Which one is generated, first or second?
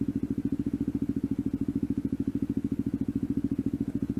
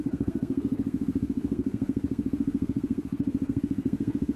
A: second